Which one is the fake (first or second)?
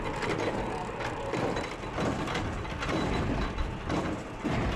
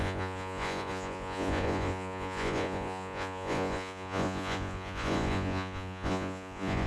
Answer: second